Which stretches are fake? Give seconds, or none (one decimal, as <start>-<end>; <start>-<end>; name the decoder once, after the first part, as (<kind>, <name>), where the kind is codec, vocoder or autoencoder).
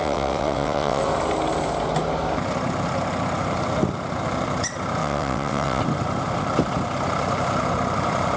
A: 0.0-1.0 (vocoder, WaveNeXt); 5.0-5.8